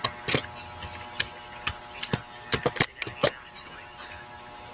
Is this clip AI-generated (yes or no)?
no